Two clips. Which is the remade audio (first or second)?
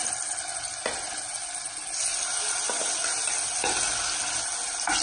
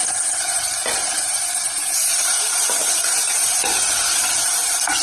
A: second